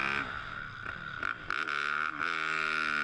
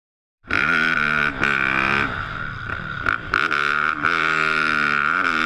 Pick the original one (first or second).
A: first